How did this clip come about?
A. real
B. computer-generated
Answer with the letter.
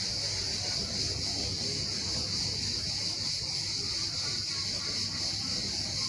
A